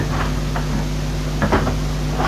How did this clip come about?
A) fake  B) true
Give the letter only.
B